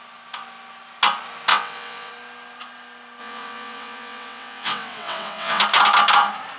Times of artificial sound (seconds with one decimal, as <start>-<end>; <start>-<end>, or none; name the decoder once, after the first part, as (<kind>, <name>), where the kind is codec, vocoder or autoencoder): 1.5-2.1 (vocoder, WaveNeXt); 3.2-5.6